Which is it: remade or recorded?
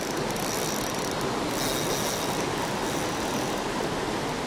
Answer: recorded